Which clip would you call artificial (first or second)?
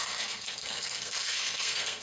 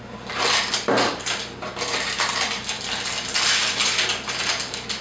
first